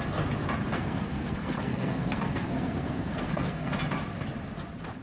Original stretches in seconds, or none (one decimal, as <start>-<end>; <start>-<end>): 0.0-0.7; 3.7-5.0